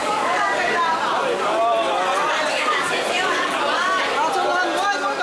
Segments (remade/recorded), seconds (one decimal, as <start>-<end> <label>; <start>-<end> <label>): 0.0-0.7 remade; 0.7-2.5 recorded; 2.5-3.6 remade; 3.6-5.2 recorded